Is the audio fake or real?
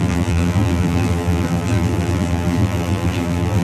fake